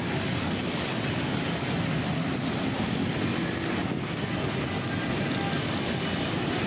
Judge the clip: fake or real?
real